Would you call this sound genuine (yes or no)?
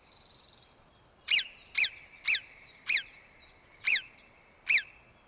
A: no